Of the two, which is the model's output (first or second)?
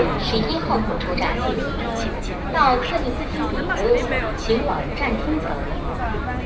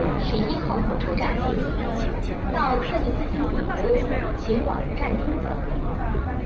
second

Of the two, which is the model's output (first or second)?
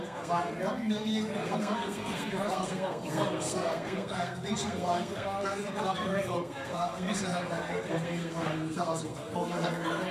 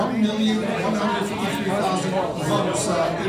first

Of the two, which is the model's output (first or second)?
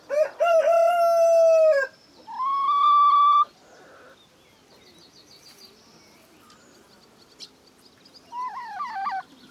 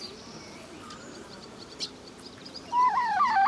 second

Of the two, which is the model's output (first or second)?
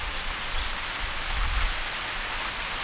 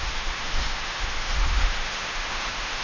second